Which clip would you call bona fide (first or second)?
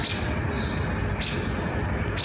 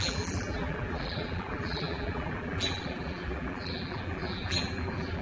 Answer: first